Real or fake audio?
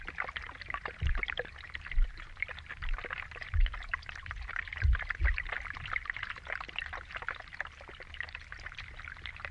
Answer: real